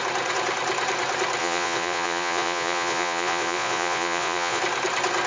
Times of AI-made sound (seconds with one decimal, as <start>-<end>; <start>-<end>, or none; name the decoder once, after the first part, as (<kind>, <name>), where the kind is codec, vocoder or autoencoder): 1.4-4.6 (vocoder, Vocos)